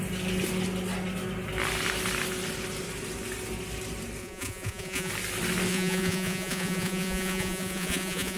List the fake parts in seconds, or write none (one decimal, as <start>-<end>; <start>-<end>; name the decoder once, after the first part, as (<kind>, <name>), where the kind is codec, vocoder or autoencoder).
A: 4.2-5.1 (vocoder, Vocos); 5.7-8.4